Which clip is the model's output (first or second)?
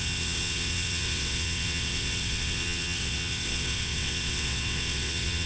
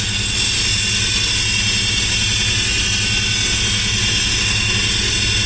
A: first